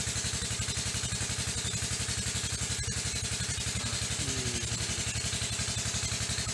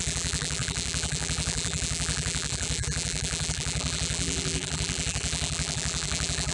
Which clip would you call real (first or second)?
first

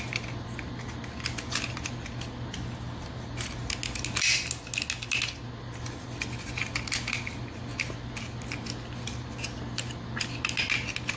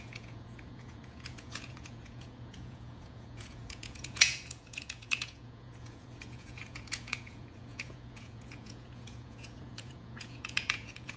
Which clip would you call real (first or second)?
first